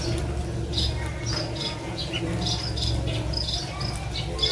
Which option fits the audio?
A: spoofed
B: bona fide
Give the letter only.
B